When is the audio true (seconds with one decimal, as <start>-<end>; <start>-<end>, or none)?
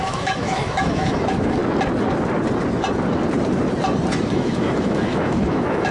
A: 1.6-4.3